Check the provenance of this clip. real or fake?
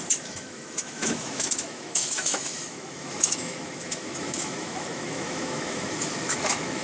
fake